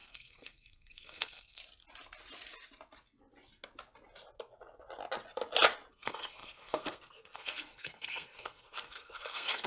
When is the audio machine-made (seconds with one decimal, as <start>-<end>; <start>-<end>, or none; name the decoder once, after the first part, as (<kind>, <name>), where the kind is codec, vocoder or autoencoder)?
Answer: 0.0-1.6 (codec, SNAC); 5.9-9.7